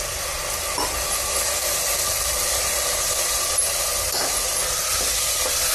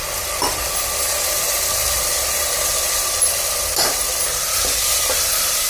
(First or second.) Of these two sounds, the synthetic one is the second